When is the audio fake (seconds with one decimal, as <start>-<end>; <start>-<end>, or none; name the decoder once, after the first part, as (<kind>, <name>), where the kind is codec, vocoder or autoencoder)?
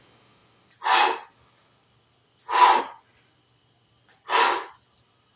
none